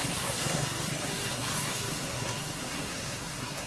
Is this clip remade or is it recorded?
remade